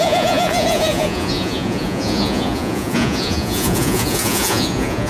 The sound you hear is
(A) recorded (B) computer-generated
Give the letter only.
B